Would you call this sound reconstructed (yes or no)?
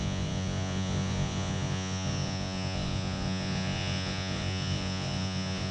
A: yes